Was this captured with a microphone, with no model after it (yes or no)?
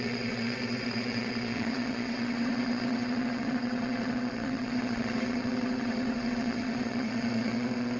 no